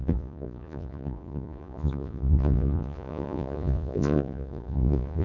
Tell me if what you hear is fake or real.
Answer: fake